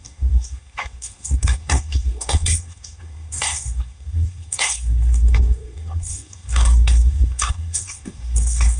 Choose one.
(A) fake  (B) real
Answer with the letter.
A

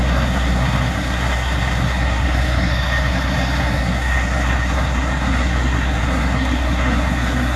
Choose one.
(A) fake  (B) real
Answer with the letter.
A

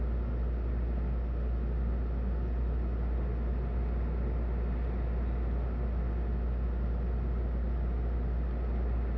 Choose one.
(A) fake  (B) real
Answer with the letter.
B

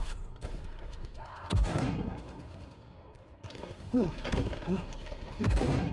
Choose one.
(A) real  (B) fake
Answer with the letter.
B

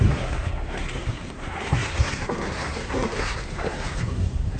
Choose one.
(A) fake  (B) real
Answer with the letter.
A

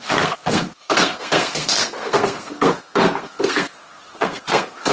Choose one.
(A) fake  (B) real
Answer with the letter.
A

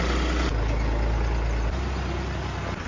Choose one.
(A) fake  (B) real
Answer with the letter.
B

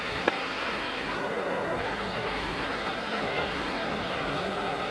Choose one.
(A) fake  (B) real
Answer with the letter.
A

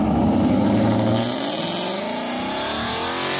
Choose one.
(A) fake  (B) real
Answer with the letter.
B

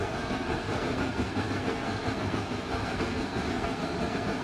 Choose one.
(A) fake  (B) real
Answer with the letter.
A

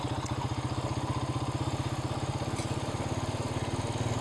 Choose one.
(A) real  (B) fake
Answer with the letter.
A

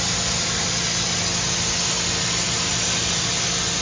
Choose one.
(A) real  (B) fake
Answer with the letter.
A